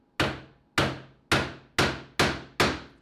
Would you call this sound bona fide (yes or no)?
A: yes